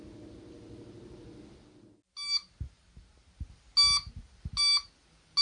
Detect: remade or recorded recorded